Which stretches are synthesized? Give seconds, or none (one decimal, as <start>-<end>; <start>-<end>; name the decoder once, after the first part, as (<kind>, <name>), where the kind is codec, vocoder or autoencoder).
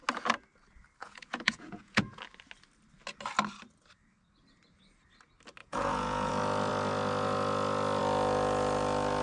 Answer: 1.0-2.2 (vocoder, Vocos); 5.6-6.3